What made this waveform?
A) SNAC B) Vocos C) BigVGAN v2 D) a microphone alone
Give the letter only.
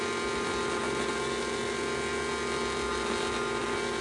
D